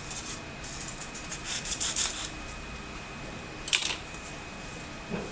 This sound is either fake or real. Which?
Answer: fake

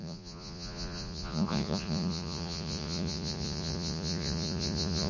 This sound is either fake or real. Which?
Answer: fake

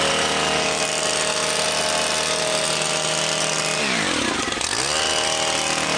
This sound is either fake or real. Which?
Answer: real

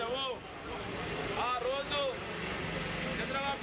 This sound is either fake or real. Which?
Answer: real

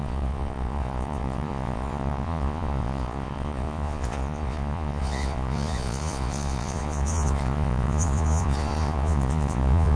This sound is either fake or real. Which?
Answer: fake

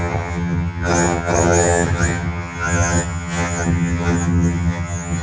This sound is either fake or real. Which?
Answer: fake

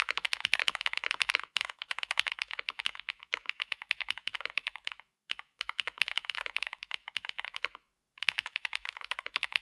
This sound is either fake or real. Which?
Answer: fake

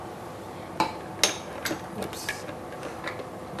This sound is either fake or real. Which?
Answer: real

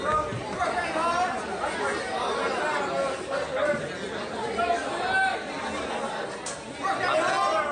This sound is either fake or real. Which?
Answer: real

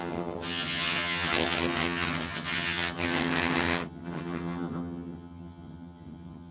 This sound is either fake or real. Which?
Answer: fake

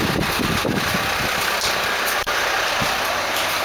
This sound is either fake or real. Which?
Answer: real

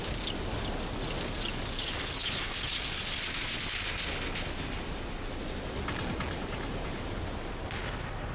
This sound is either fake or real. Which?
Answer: real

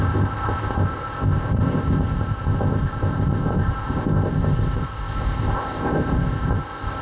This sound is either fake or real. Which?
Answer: fake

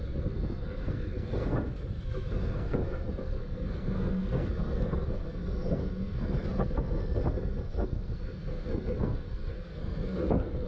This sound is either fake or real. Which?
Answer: fake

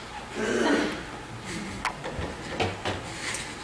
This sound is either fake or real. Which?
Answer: real